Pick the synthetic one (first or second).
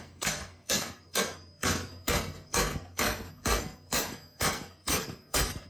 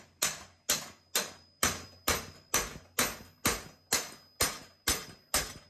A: first